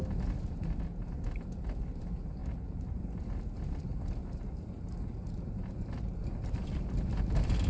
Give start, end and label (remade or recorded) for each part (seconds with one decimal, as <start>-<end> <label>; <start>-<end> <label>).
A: 0.0-2.4 recorded; 2.4-3.0 remade; 3.0-4.2 recorded; 4.2-6.2 remade; 6.2-7.7 recorded